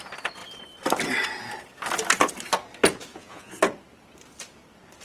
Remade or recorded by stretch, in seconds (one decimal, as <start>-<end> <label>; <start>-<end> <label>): 0.0-3.1 recorded; 3.1-3.6 remade; 3.6-5.0 recorded